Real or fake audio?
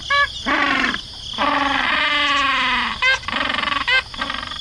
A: real